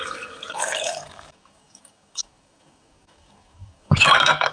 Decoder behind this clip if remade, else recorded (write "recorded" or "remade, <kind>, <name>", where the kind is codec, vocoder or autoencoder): remade, codec, DAC